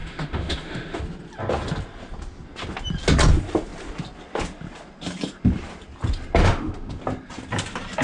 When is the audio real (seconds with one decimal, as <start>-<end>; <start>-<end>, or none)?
1.0-6.4; 7.0-8.0